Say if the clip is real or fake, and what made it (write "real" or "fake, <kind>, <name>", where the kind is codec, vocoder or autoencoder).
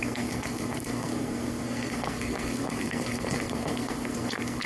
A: fake, codec, SNAC